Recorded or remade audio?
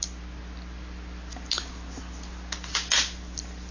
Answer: recorded